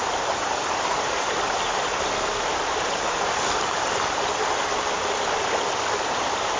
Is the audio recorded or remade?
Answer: remade